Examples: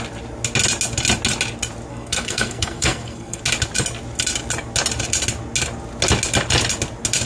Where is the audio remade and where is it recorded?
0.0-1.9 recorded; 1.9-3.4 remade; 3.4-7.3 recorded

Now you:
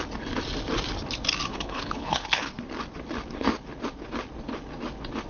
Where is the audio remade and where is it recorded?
0.0-1.5 recorded; 1.5-2.6 remade; 2.6-5.3 recorded

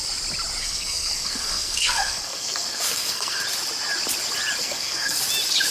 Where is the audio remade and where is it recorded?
0.0-0.6 recorded; 0.6-3.4 remade; 3.4-4.6 recorded; 4.6-5.2 remade; 5.2-5.7 recorded

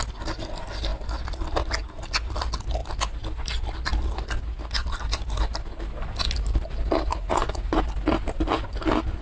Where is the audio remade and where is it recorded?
0.0-7.1 recorded; 7.1-7.8 remade; 7.8-9.2 recorded

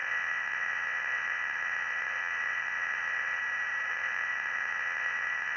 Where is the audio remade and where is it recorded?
0.0-3.4 remade; 3.4-3.9 recorded; 3.9-5.6 remade